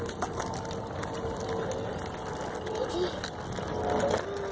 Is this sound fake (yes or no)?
no